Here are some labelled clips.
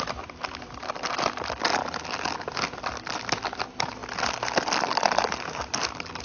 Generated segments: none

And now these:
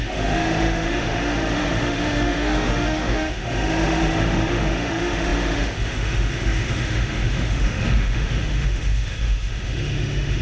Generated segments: 0.0-10.4 (autoencoder, DAC-VAE)

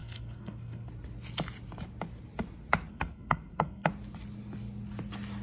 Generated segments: 0.0-0.9 (codec, SNAC); 2.9-3.9

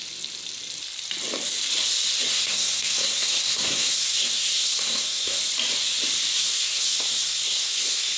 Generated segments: 2.3-5.4 (codec, SNAC); 6.4-8.2